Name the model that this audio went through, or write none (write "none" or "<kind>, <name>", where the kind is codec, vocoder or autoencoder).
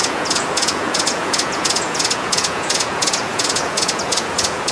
vocoder, Vocos